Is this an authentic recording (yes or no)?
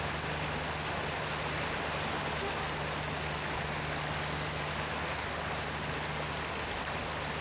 yes